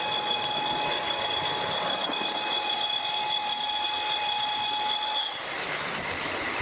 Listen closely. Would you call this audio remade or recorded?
recorded